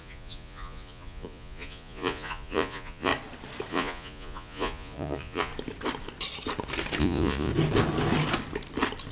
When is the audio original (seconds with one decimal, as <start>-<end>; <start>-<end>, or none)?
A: 3.1-3.7; 5.5-7.0; 7.5-9.1